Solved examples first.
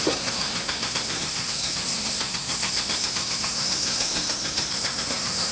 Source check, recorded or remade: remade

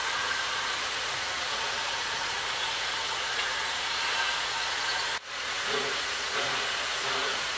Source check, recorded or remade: remade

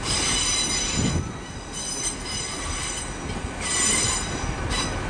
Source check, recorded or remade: recorded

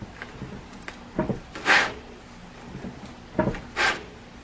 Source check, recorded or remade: recorded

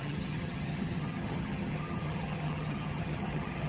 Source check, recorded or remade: remade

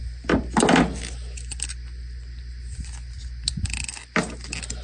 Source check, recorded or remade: recorded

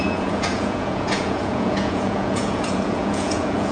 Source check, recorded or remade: remade